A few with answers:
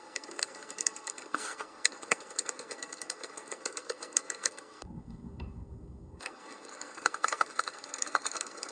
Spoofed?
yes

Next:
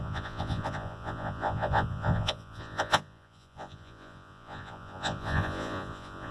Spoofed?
yes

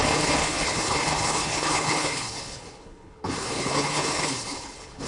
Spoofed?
yes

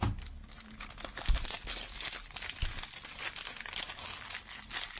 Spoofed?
no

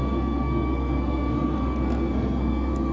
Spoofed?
yes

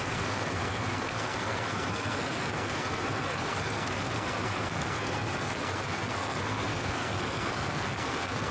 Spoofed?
yes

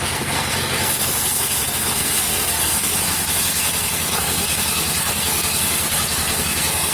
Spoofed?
yes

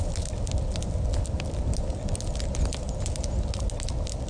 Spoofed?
no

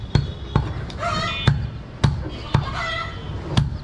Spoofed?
no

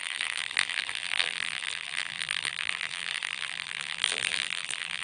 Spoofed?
yes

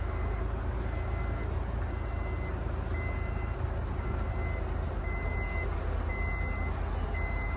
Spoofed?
no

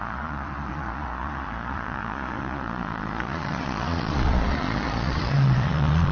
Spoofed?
yes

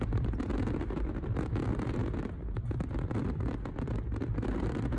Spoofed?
yes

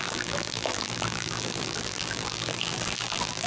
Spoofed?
yes